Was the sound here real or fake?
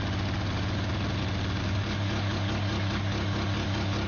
real